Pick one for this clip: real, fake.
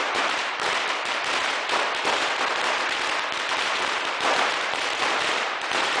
fake